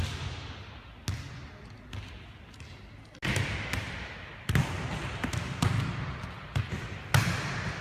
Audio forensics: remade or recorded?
recorded